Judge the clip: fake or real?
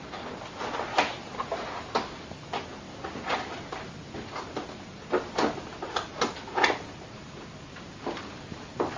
real